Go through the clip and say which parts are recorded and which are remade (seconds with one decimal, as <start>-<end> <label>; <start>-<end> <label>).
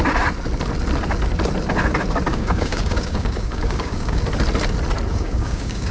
0.0-2.3 recorded; 2.3-4.2 remade; 4.2-5.1 recorded; 5.1-5.9 remade